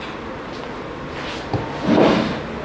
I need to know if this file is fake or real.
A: real